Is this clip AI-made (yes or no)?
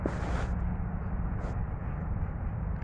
no